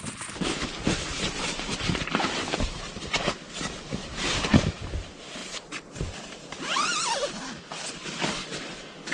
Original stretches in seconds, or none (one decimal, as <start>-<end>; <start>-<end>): 0.0-1.1; 3.3-9.1